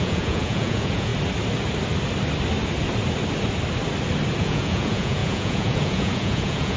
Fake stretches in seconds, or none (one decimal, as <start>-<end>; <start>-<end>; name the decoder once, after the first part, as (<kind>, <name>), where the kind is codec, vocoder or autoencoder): 0.0-1.1 (vocoder, Vocos); 4.4-6.8